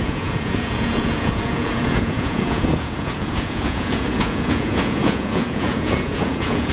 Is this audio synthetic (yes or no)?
yes